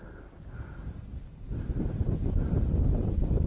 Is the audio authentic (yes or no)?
yes